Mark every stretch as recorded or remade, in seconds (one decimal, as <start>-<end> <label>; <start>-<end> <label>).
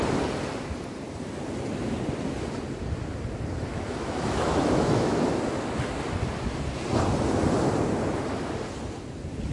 0.0-3.7 recorded; 3.7-5.4 remade; 5.4-9.5 recorded